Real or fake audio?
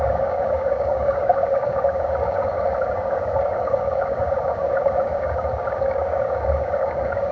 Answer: fake